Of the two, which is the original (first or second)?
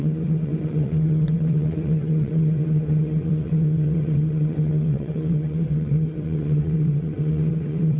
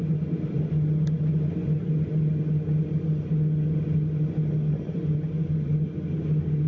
second